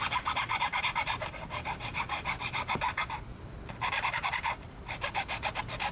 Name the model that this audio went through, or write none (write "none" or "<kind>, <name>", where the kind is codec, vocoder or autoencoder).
none